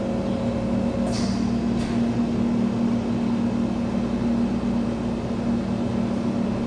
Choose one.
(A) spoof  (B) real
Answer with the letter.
B